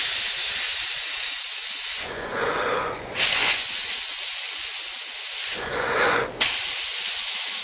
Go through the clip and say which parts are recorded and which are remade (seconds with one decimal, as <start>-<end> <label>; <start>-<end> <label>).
0.0-1.6 recorded; 1.6-4.8 remade; 4.8-5.5 recorded; 5.5-6.5 remade; 6.5-6.9 recorded; 6.9-7.6 remade